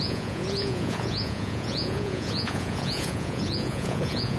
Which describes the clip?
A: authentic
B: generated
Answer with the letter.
B